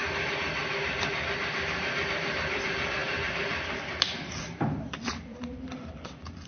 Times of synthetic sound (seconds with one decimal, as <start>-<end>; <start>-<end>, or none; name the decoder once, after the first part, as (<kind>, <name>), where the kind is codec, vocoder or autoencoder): 0.0-0.5 (vocoder, BigVGAN v2); 1.5-3.0; 4.4-6.5